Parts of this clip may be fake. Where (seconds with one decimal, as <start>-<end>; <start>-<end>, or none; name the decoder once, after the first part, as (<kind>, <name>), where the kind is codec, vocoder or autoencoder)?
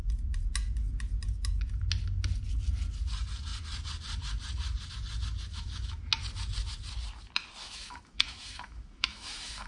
5.5-6.0 (autoencoder, DAC-VAE); 7.6-9.7